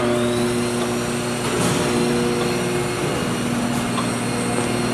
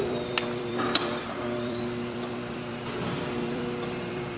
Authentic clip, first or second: first